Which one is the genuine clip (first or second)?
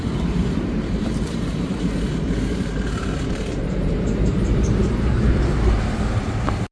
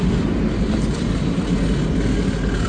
second